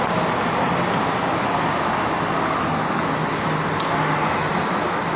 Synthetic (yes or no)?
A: no